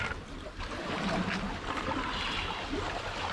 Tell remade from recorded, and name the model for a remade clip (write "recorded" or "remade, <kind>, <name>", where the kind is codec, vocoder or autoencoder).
recorded